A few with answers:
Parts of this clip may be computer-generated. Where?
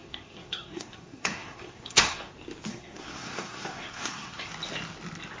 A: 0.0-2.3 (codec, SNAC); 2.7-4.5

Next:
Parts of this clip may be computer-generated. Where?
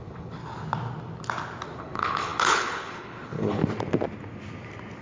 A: 0.0-0.4 (codec, HILCodec); 1.8-3.6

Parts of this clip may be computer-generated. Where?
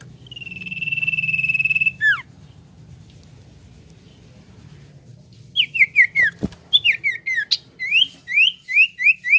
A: none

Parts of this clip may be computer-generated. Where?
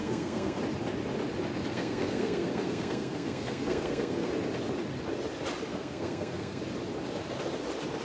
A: 0.0-0.6 (codec, SNAC); 1.7-4.3; 5.7-6.6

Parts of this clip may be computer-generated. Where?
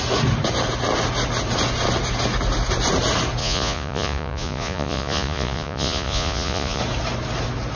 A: 3.4-6.8 (vocoder, Vocos)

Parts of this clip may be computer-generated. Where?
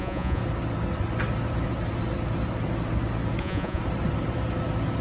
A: 0.0-0.4 (vocoder, Vocos); 3.4-3.8